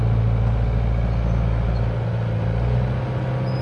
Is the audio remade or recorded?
recorded